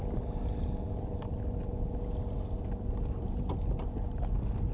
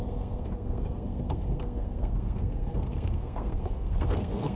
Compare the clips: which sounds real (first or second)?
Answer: first